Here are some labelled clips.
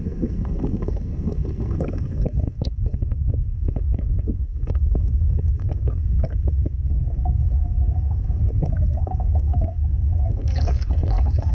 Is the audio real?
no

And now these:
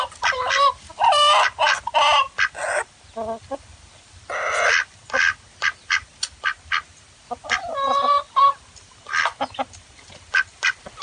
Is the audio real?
yes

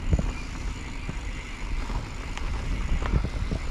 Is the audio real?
yes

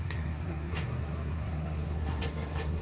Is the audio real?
no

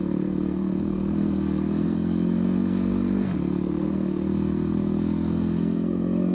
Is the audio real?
no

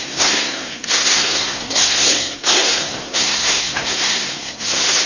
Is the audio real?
no